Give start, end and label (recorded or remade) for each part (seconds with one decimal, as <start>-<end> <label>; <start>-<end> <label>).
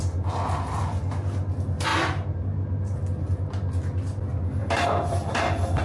0.0-5.8 recorded